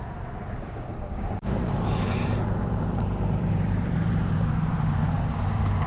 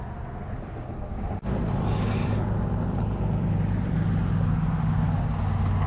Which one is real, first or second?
second